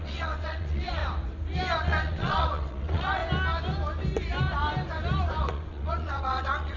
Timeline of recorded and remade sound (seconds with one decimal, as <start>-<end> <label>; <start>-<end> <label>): 0.0-1.0 remade; 1.0-1.8 recorded; 1.8-3.2 remade; 3.2-5.4 recorded; 5.4-6.8 remade